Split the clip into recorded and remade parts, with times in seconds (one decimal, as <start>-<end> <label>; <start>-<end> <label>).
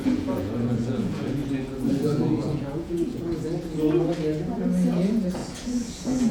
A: 0.0-1.4 remade; 1.4-1.9 recorded; 1.9-3.3 remade; 3.3-5.0 recorded; 5.0-6.3 remade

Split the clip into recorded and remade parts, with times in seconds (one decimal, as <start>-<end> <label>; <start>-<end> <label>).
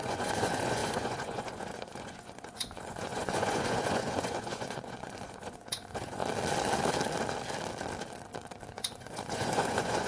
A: 0.0-6.2 remade; 6.2-8.7 recorded; 8.7-10.1 remade